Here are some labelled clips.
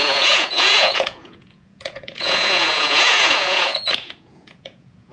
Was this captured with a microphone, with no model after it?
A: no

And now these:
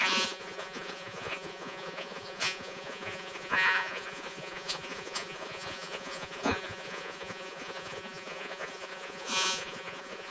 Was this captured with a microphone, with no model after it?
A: no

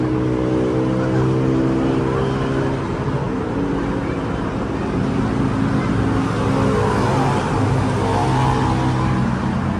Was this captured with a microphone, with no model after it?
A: yes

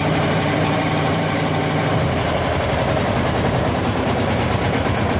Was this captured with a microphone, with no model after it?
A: no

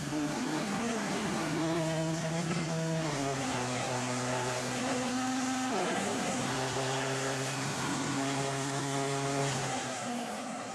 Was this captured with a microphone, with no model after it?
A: no